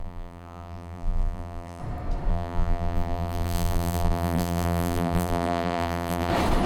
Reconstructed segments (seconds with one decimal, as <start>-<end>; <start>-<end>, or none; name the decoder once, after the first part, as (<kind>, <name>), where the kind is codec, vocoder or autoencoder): 0.0-1.8 (vocoder, BigVGAN v2); 2.3-6.3